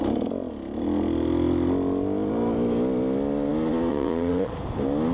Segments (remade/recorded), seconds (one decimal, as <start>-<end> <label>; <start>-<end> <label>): 0.0-3.9 recorded; 3.9-4.5 remade; 4.5-5.1 recorded